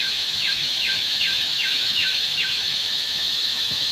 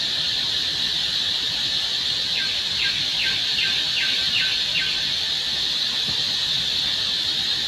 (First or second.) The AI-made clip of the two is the first